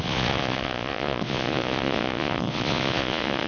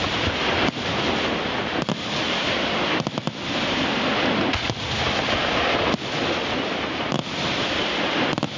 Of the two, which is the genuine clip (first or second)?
second